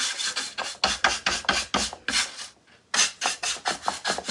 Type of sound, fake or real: real